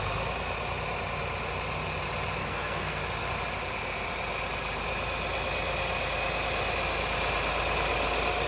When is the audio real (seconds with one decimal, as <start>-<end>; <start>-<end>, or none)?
0.0-2.4; 3.0-8.5